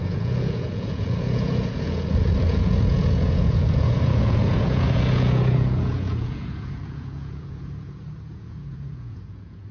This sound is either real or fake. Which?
fake